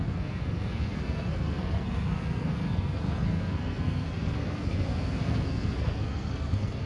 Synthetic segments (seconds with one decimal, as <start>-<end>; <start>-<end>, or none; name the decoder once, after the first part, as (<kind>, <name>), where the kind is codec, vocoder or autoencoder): 0.0-6.9 (codec, SNAC)

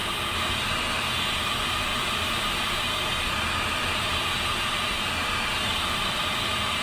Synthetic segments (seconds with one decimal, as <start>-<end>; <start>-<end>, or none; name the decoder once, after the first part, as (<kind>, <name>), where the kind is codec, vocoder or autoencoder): 1.9-2.8 (vocoder, BigVGAN v2); 5.7-6.2

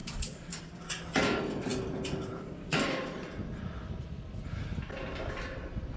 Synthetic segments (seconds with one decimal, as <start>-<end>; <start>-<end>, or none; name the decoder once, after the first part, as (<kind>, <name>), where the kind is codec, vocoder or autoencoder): 0.0-0.6 (codec, DAC)

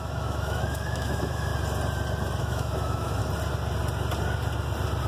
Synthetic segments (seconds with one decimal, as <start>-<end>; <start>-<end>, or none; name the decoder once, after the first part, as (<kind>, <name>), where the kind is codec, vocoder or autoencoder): 0.0-1.5 (autoencoder, DAC-VAE); 2.4-3.2

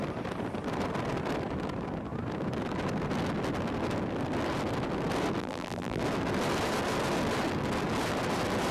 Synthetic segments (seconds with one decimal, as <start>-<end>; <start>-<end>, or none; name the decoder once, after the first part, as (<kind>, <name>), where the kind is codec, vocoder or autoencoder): 5.4-6.0 (vocoder, BigVGAN v2)

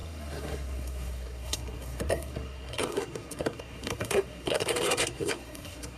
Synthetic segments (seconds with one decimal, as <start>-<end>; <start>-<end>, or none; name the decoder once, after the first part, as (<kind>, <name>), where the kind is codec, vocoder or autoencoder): 0.0-6.0 (codec, SNAC)

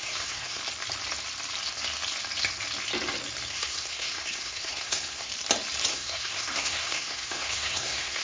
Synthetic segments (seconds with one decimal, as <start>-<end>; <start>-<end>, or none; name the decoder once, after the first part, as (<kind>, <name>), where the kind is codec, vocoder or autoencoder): 0.0-0.6 (codec, SNAC); 3.5-5.3; 5.9-8.2